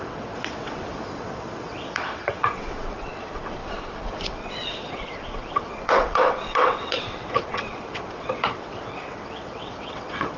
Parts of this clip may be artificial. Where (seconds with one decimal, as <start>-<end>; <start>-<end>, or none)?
0.0-10.4